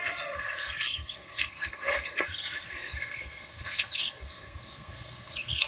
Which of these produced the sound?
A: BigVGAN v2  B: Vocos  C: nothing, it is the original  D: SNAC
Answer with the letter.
D